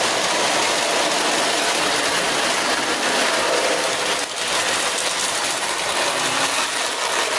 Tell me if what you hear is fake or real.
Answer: real